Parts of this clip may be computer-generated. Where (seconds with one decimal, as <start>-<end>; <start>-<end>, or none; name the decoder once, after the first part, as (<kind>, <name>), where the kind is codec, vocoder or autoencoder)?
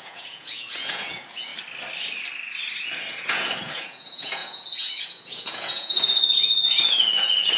0.0-1.5 (vocoder, Vocos); 3.1-7.6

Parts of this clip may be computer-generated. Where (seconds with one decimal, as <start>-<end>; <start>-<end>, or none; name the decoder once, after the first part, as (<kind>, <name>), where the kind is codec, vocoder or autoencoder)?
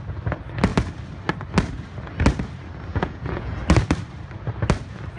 2.9-3.5 (vocoder, Vocos)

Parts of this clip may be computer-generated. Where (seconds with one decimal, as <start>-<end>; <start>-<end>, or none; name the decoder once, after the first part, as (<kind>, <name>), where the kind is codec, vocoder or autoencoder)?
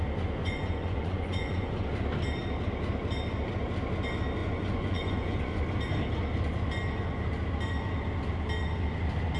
0.4-1.9 (vocoder, Vocos); 4.4-5.6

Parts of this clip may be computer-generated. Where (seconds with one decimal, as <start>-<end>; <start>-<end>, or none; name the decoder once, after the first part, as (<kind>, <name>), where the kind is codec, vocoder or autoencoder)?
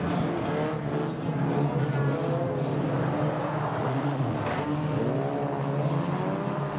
3.8-4.4 (vocoder, Vocos)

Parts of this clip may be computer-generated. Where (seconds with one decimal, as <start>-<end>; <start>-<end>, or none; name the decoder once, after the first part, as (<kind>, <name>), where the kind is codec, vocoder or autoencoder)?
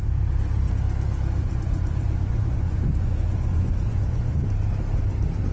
1.4-4.4 (vocoder, Vocos)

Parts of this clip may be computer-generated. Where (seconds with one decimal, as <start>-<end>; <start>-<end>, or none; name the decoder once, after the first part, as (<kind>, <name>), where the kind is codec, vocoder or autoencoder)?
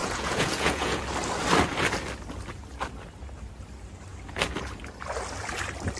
0.0-1.0 (vocoder, Vocos)